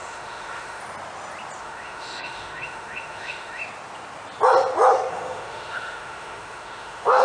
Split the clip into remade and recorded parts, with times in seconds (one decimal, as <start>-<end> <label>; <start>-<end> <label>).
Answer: 0.0-0.8 remade; 0.8-1.6 recorded; 1.6-3.6 remade; 3.6-5.1 recorded; 5.1-7.2 remade